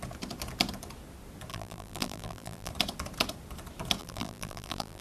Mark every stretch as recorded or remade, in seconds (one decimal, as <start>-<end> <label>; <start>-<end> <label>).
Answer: 0.0-1.5 recorded; 1.5-2.7 remade; 2.7-4.0 recorded; 4.0-5.0 remade